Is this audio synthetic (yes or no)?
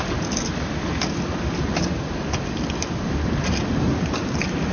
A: no